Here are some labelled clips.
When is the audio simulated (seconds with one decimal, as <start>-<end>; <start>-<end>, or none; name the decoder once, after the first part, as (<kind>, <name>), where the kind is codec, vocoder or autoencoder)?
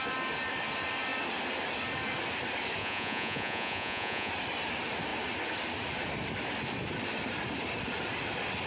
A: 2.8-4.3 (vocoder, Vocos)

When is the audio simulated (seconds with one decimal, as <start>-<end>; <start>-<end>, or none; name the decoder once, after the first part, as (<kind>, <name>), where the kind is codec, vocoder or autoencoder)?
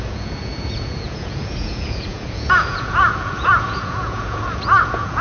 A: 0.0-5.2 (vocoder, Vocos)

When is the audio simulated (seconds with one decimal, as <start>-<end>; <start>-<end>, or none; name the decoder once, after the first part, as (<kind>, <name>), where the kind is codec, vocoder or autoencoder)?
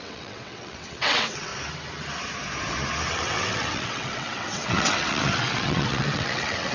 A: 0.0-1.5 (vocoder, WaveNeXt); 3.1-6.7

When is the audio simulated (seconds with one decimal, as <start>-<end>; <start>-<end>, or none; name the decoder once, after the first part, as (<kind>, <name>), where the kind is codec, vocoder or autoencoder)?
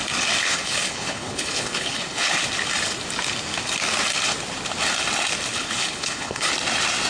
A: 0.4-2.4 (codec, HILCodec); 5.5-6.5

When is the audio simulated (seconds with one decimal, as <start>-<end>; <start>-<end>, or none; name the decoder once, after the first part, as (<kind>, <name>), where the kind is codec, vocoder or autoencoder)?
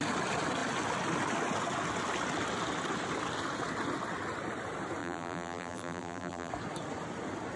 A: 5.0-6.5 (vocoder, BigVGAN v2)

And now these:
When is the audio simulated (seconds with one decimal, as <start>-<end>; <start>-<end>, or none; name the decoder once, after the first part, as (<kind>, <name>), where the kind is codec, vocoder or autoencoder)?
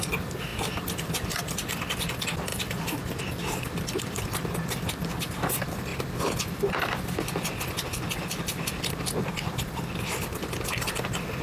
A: 5.9-7.5 (vocoder, BigVGAN v2); 8.5-9.6